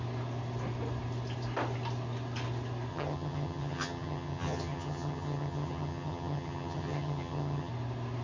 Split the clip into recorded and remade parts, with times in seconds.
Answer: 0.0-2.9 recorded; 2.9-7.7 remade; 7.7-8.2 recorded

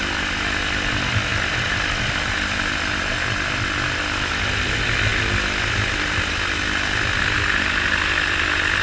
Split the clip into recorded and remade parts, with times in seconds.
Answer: 0.0-8.8 recorded